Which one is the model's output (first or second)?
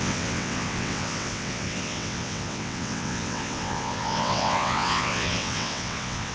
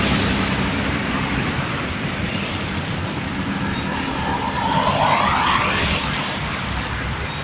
first